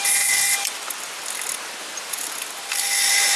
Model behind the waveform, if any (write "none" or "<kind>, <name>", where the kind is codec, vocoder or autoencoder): none